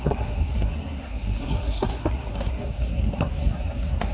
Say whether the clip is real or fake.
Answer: fake